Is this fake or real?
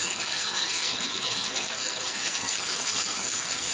fake